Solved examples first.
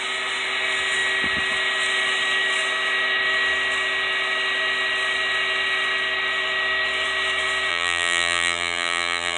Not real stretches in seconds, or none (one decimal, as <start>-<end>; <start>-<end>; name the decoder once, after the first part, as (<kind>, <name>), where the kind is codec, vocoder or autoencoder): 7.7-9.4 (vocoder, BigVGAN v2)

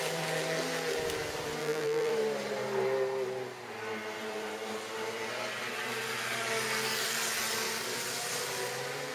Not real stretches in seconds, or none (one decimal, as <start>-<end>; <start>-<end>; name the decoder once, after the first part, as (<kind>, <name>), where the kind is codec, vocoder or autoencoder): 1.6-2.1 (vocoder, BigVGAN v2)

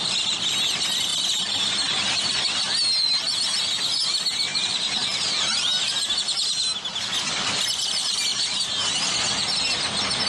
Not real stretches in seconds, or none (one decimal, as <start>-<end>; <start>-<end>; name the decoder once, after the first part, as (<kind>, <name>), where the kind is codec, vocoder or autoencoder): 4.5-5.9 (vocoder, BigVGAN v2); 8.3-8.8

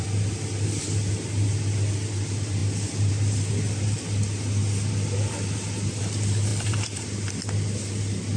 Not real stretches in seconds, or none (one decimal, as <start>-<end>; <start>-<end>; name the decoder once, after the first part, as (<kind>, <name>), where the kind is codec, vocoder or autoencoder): 2.6-3.1 (vocoder, BigVGAN v2); 6.5-7.3

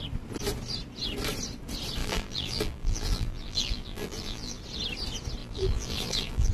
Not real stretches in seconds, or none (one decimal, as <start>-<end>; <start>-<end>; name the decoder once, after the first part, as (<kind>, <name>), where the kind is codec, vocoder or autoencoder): 2.0-4.6 (vocoder, BigVGAN v2); 5.4-6.5

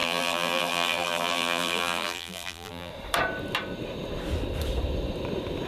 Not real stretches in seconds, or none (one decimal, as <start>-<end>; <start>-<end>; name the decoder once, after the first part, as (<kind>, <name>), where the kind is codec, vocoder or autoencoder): 0.0-2.9 (vocoder, BigVGAN v2)

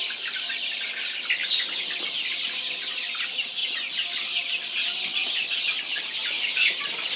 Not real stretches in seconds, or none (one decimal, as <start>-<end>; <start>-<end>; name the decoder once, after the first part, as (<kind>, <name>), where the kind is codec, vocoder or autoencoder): 1.4-2.4 (vocoder, BigVGAN v2); 5.9-6.7